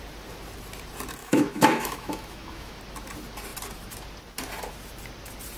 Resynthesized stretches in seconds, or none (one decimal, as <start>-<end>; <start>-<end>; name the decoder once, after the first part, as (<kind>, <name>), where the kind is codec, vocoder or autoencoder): 1.2-2.8 (autoencoder, DAC-VAE)